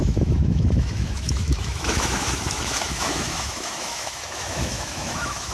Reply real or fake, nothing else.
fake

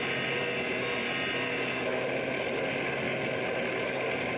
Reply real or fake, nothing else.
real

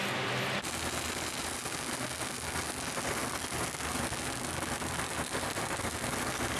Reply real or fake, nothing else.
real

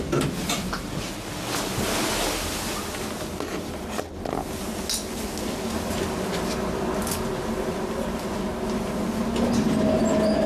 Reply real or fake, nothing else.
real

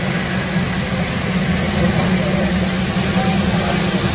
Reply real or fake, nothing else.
real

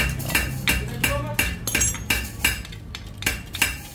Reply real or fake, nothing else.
real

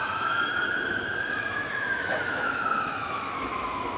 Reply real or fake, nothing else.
fake